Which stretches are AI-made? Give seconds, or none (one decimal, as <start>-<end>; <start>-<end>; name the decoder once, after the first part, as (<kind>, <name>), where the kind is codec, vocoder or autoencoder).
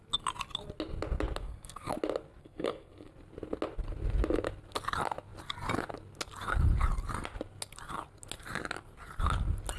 1.4-1.9 (codec, SNAC); 2.4-3.1